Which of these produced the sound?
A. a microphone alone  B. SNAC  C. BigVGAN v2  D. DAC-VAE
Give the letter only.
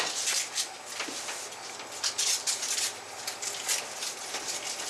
A